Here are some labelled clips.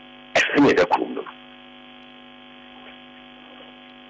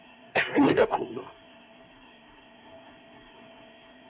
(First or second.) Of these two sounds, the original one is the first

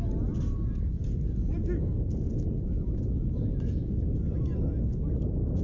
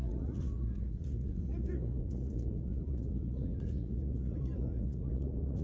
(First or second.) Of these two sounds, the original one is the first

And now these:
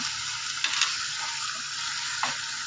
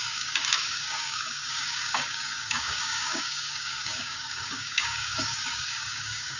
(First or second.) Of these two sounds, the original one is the first